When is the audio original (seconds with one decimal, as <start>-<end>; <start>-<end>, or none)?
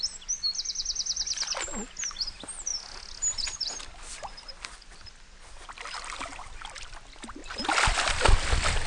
0.0-8.9